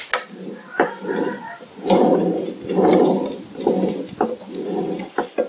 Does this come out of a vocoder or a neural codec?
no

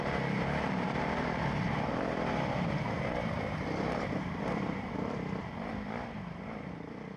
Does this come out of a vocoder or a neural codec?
yes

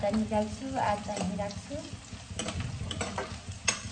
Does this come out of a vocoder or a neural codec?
no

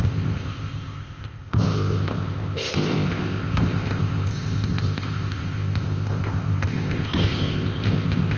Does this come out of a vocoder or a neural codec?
yes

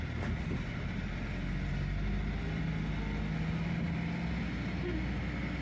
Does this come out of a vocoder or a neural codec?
no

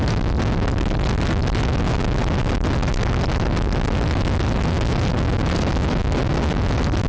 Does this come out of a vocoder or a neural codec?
no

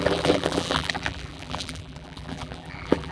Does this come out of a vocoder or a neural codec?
yes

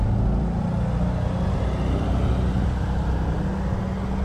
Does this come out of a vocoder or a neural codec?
no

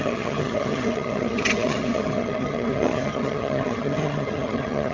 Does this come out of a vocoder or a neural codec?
yes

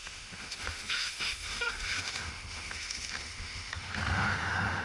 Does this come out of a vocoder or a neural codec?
yes